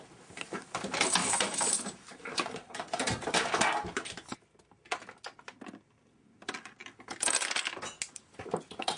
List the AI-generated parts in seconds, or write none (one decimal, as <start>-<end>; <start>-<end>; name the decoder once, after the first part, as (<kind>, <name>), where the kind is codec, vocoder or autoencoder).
1.2-3.3 (vocoder, BigVGAN v2)